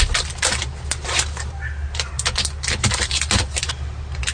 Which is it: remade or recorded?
recorded